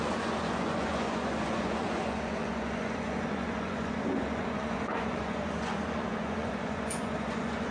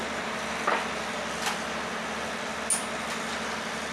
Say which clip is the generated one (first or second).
first